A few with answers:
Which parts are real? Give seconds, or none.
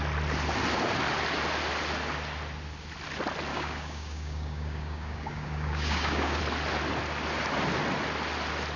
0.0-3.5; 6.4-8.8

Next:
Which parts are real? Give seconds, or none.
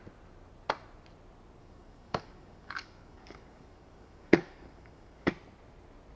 0.0-1.6; 5.3-6.2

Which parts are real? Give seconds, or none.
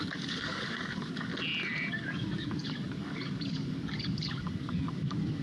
1.3-1.9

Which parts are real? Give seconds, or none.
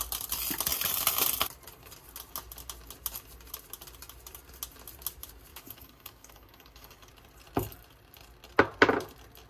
0.0-5.5; 7.1-9.5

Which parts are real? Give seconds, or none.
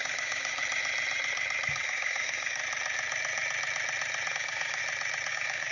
0.6-1.7; 2.6-4.3; 4.8-5.3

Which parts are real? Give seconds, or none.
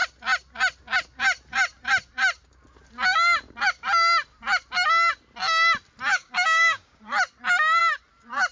0.0-6.1; 7.0-8.5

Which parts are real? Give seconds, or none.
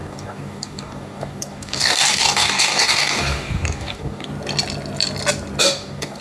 4.3-5.6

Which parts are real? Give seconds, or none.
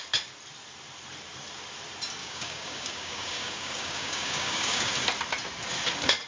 0.0-2.2; 4.9-6.3